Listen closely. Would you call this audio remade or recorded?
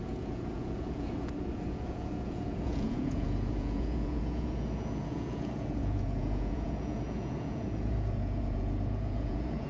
remade